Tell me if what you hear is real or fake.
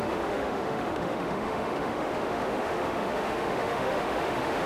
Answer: fake